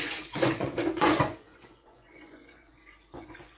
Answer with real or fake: fake